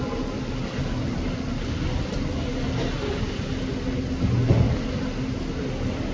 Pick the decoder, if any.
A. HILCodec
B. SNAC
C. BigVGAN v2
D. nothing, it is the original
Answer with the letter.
D